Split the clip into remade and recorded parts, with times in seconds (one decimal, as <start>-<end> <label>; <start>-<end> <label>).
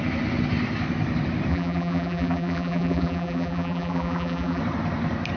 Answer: 0.0-1.5 recorded; 1.5-4.6 remade; 4.6-5.4 recorded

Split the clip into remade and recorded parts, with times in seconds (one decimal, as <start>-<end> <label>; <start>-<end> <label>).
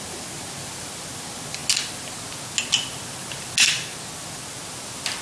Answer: 0.0-5.2 recorded